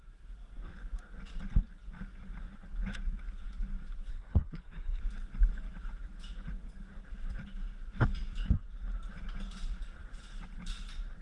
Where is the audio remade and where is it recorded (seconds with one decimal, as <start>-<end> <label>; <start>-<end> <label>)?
0.0-4.1 recorded; 4.1-5.0 remade; 5.0-11.2 recorded